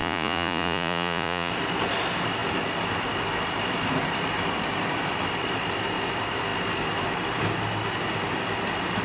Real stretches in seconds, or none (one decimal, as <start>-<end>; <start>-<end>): 1.5-9.0